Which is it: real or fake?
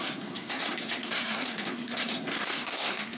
fake